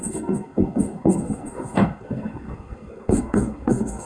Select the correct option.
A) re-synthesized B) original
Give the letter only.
A